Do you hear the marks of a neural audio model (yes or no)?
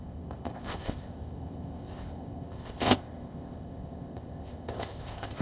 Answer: yes